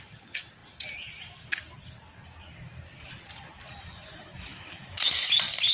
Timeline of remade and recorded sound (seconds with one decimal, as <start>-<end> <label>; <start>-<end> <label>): 0.0-4.5 recorded; 4.5-5.3 remade; 5.3-5.7 recorded